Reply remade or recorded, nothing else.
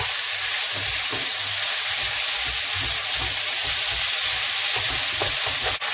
recorded